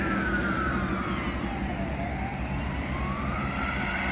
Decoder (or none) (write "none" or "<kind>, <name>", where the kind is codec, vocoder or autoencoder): none